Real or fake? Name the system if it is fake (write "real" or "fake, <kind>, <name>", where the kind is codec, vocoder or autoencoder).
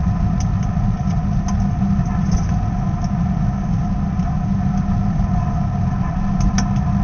real